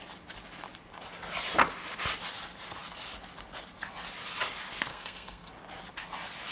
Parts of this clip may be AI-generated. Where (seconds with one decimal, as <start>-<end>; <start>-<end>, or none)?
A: 4.9-5.5